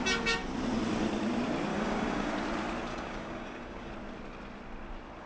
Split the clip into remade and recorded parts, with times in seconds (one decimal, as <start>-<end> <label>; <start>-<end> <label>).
0.0-1.7 recorded; 1.7-2.3 remade; 2.3-2.9 recorded; 2.9-3.9 remade; 3.9-5.3 recorded